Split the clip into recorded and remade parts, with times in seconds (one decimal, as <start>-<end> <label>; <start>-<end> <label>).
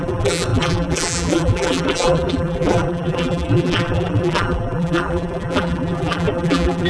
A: 0.0-6.9 remade